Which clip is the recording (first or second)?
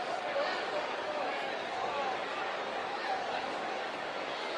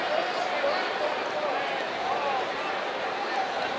second